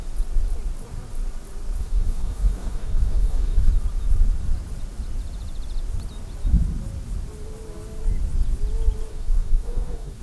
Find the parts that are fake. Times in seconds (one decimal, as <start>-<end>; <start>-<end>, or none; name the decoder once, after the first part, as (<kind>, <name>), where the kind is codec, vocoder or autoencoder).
1.8-3.7 (codec, DAC); 9.1-10.2